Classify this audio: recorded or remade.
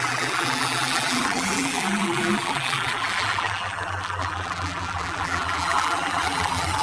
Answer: remade